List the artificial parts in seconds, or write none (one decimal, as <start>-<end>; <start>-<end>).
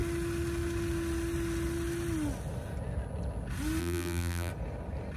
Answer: 3.8-4.5